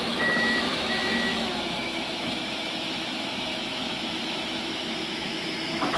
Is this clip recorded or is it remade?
remade